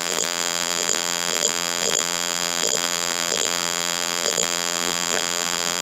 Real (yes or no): no